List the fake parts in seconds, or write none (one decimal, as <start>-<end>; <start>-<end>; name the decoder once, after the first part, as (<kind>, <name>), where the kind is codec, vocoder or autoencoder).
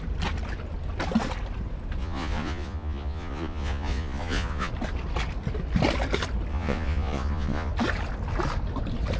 2.0-4.7 (vocoder, Vocos); 6.5-7.7